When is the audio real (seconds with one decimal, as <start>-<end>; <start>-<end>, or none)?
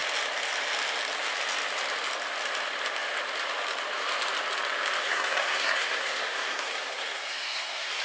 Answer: 0.0-5.0